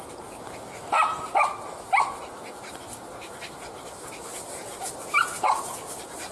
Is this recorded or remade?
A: recorded